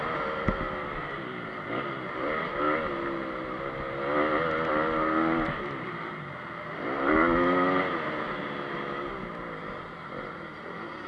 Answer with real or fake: real